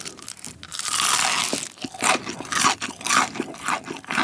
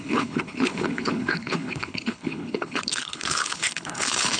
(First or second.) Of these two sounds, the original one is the first